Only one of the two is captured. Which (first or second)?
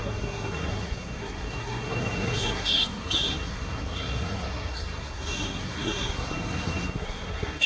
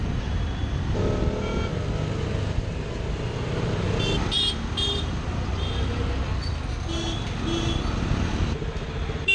second